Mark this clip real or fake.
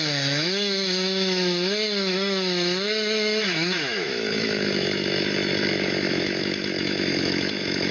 fake